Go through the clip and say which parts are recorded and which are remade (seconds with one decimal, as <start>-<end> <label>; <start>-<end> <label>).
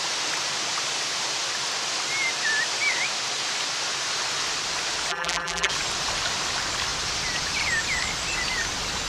0.0-5.1 recorded; 5.1-5.7 remade; 5.7-9.1 recorded